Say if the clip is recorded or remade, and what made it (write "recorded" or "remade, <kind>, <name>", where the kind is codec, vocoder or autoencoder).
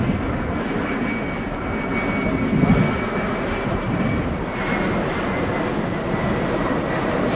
recorded